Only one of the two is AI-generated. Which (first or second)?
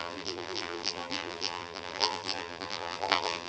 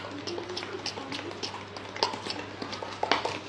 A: first